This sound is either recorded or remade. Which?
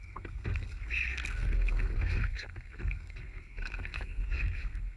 remade